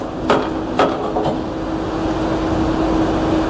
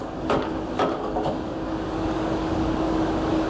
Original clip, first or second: first